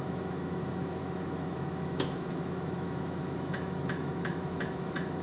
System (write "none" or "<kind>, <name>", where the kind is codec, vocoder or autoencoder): autoencoder, DAC-VAE